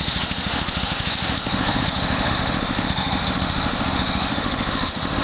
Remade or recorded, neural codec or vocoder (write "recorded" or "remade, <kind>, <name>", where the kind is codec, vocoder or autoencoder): remade, autoencoder, DAC-VAE